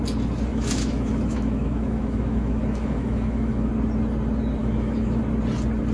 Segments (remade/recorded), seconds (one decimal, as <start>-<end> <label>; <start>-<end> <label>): 0.0-0.5 recorded; 0.5-3.7 remade; 3.7-4.6 recorded; 4.6-5.2 remade; 5.2-5.9 recorded